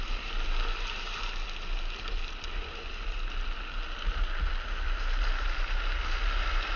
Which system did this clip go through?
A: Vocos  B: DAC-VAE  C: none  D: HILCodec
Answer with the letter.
C